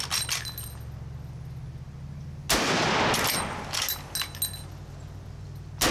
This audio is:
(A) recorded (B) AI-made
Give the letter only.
A